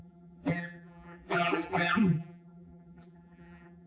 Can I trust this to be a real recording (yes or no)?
no